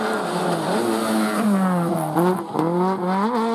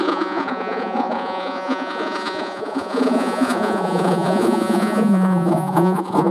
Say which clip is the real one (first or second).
first